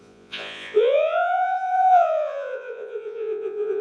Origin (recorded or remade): remade